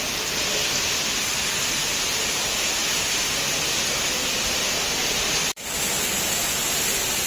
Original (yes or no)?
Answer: yes